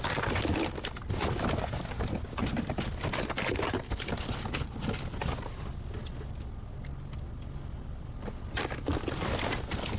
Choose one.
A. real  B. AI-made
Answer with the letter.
A